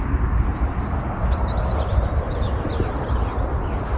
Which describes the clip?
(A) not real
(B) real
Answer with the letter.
B